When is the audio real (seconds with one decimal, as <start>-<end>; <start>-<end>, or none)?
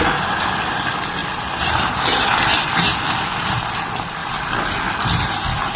0.0-5.8